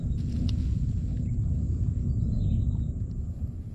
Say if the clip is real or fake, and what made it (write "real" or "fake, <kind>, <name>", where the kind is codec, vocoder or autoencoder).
fake, vocoder, Vocos